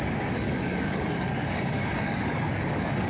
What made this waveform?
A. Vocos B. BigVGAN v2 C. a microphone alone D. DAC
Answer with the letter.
D